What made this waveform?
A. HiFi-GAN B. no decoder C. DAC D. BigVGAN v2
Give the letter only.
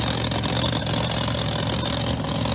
B